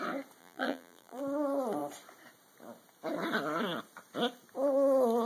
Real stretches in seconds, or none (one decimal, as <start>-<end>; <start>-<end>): 0.0-0.4; 1.2-5.3